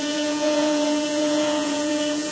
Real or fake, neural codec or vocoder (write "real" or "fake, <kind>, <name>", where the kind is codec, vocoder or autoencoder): fake, vocoder, Vocos